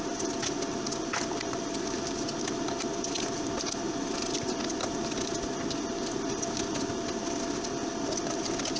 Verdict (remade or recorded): recorded